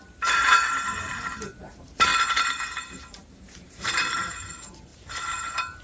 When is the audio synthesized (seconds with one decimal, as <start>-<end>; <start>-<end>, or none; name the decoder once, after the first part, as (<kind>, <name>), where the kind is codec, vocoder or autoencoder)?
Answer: 0.0-2.1 (vocoder, BigVGAN v2); 2.7-5.8

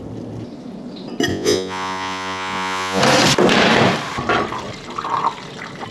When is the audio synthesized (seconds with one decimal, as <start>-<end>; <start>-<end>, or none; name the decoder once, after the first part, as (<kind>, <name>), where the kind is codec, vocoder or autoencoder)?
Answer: 1.3-3.0 (vocoder, Vocos)

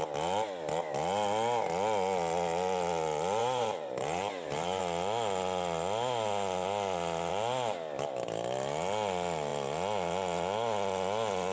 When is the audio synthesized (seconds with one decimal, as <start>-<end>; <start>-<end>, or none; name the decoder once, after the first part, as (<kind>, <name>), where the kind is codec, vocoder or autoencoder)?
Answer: 3.4-4.8 (vocoder, BigVGAN v2)

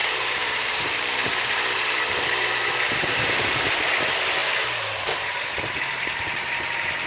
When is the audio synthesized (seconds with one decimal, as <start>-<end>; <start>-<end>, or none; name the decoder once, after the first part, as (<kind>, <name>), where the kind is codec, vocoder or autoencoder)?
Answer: 0.0-7.1 (vocoder, BigVGAN v2)

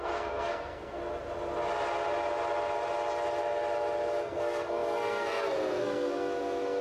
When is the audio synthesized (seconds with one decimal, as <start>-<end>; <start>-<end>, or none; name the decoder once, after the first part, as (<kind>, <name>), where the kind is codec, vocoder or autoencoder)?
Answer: 0.0-1.0 (codec, SNAC); 4.2-6.8

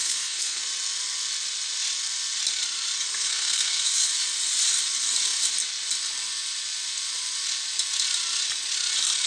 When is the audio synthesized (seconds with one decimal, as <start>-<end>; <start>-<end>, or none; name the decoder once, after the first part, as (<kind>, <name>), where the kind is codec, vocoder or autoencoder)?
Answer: 0.0-0.6 (codec, SNAC); 3.1-3.9

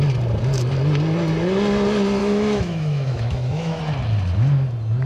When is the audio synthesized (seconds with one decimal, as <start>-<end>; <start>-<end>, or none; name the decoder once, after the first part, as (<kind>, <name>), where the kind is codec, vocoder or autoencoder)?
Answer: 2.2-3.8 (autoencoder, DAC-VAE)

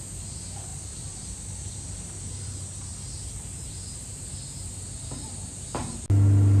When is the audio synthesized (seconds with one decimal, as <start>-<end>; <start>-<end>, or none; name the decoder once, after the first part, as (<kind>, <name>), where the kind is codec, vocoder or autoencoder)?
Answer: none